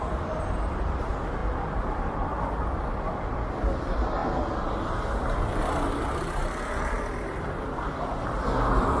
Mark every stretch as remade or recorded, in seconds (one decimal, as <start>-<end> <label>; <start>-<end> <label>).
0.0-4.2 remade; 4.2-4.8 recorded; 4.8-9.0 remade